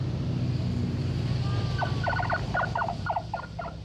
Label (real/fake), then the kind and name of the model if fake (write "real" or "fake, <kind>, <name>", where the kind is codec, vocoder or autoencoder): real